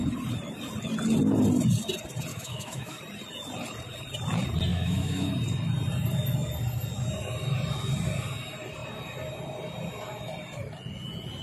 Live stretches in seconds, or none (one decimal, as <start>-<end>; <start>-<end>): 0.0-2.3; 3.0-4.7; 5.3-11.4